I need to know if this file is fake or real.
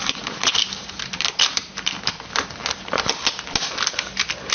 real